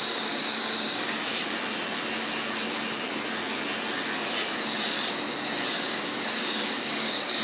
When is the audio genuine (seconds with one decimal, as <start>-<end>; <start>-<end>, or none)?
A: 1.3-5.7